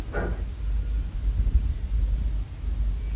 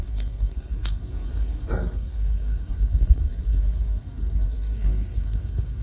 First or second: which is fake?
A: second